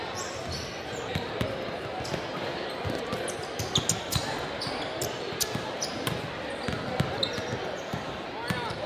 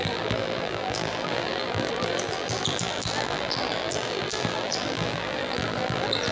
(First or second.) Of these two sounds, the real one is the first